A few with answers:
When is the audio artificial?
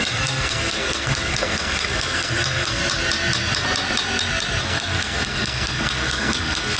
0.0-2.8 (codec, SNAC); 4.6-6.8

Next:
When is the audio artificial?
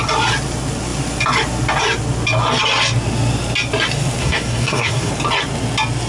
4.2-5.1 (codec, SNAC)